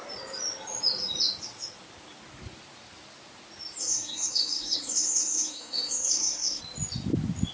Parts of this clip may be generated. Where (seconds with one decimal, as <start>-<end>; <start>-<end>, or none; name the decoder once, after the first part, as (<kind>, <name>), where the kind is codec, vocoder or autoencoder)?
3.8-6.6 (codec, SNAC)